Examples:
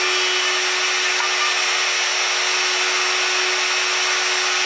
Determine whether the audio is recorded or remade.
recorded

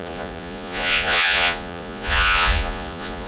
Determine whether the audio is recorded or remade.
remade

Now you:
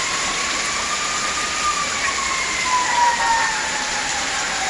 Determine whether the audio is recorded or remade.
remade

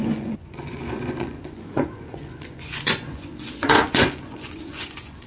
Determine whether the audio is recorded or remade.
remade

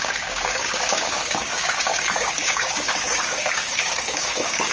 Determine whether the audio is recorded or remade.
remade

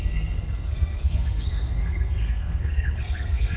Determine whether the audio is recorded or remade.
remade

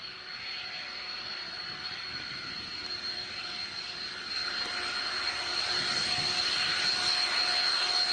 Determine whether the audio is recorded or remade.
recorded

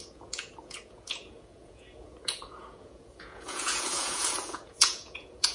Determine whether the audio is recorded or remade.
remade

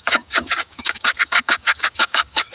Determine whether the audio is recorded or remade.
remade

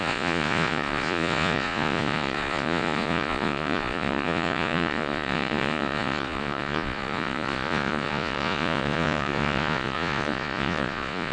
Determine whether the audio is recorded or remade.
remade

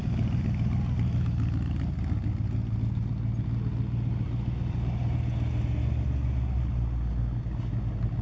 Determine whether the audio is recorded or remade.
recorded